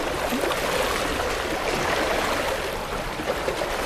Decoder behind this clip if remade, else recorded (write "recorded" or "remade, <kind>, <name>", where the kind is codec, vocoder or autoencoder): recorded